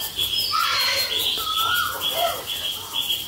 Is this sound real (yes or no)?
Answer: yes